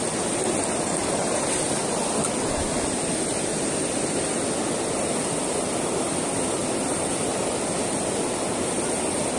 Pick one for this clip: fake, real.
real